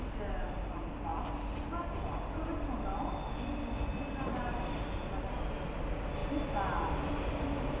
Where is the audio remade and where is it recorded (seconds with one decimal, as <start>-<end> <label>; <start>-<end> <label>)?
0.0-7.8 recorded

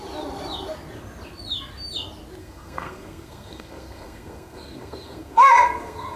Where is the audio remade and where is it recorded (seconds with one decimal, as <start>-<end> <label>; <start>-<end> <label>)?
0.0-2.4 recorded; 2.4-6.2 remade

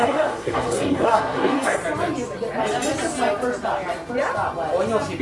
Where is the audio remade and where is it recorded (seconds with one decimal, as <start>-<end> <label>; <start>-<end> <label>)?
0.0-1.8 remade; 1.8-5.2 recorded

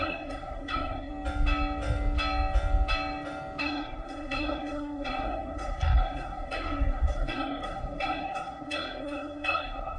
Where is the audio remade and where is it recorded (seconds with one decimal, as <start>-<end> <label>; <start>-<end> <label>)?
0.0-1.1 remade; 1.1-3.6 recorded; 3.6-10.0 remade

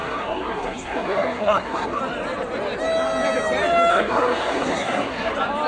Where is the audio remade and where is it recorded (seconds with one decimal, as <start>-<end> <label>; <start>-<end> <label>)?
0.0-2.0 remade; 2.0-3.9 recorded; 3.9-5.3 remade; 5.3-5.7 recorded

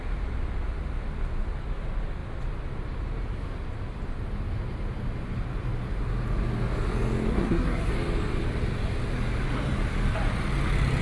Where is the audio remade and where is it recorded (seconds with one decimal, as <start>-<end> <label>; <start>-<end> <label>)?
0.0-7.3 recorded; 7.3-7.9 remade; 7.9-11.0 recorded

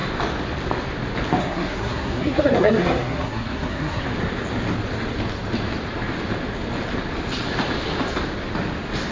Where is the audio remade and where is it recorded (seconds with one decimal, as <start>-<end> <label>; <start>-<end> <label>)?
0.0-1.4 recorded; 1.4-4.0 remade; 4.0-9.1 recorded

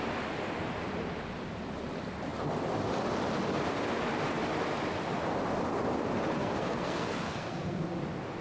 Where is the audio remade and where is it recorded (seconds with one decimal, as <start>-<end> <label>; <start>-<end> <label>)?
0.0-6.4 recorded; 6.4-7.8 remade; 7.8-8.4 recorded